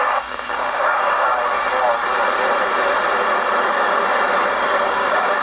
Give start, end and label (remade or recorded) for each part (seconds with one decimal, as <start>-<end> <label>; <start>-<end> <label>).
0.0-1.3 remade; 1.3-4.5 recorded; 4.5-5.4 remade

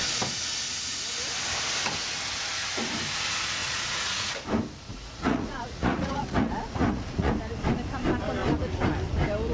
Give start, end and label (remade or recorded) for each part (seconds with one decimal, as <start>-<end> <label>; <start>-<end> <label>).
0.0-3.6 recorded; 3.6-4.3 remade; 4.3-4.9 recorded; 4.9-7.3 remade; 7.3-9.5 recorded

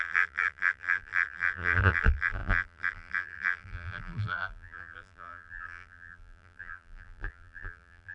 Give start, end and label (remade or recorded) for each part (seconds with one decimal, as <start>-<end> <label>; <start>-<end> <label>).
0.0-8.1 remade

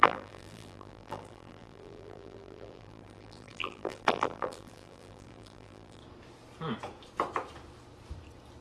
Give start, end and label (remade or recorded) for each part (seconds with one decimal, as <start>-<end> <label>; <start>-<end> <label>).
0.0-6.0 remade; 6.0-8.6 recorded

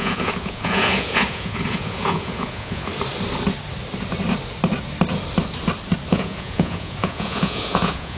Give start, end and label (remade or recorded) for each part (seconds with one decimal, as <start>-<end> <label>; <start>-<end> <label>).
0.0-2.9 remade; 2.9-6.1 recorded; 6.1-8.2 remade